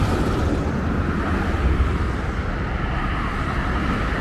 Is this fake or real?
real